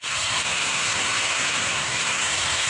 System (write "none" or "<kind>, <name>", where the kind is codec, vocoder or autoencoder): codec, SNAC